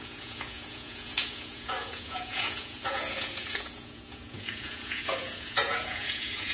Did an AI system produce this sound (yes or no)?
yes